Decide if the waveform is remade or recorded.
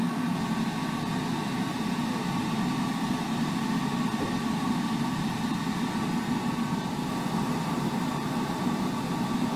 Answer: recorded